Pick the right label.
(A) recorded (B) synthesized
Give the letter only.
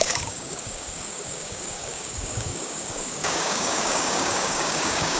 B